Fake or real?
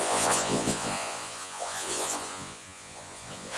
fake